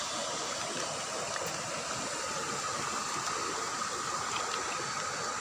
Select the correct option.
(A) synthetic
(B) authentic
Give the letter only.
B